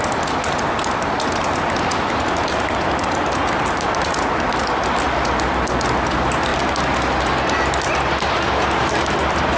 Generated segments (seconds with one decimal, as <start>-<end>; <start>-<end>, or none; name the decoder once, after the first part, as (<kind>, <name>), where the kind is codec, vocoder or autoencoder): none